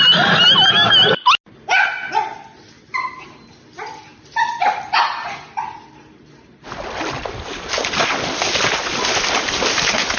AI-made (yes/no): no